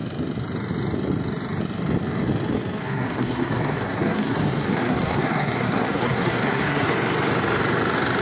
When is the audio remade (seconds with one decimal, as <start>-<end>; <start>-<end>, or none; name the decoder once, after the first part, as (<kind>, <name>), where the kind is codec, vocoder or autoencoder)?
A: 2.8-6.9 (codec, SNAC)